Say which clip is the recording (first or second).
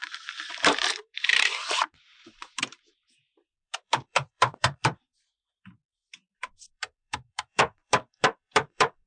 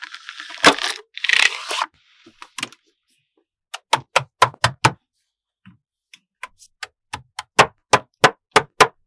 second